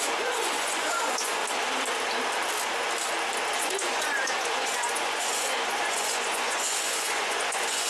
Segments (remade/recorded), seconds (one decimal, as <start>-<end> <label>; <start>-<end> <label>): 0.0-1.4 remade; 1.4-3.6 recorded; 3.6-7.9 remade